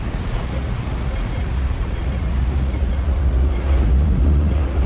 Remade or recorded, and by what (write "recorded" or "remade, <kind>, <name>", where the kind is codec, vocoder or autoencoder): remade, vocoder, Vocos